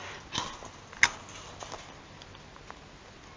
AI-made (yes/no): no